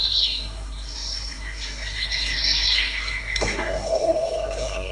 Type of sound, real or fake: fake